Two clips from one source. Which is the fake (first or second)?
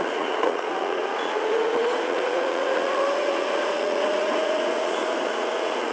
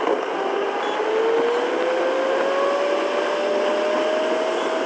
first